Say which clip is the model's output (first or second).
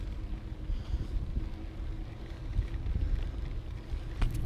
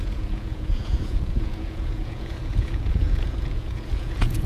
second